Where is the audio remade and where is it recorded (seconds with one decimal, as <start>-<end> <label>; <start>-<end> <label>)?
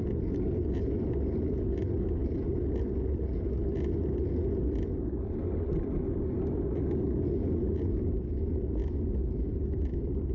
0.0-10.3 recorded